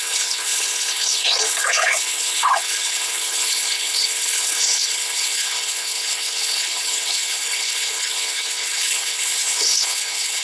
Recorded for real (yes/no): no